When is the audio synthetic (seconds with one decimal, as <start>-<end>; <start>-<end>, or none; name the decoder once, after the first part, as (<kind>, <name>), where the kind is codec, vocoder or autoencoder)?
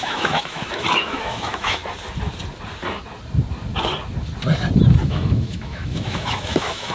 0.0-1.8 (autoencoder, DAC-VAE); 5.0-6.9